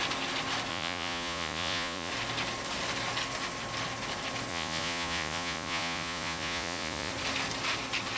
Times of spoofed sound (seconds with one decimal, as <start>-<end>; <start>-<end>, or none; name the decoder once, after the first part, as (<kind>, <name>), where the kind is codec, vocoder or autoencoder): 0.7-2.1 (vocoder, Vocos); 4.5-7.1